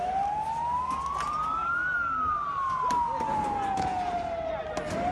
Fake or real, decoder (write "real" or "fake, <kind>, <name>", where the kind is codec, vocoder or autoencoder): real